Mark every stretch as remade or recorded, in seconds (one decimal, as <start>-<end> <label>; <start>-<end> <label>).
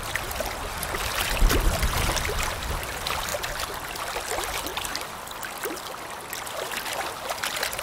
0.0-7.8 recorded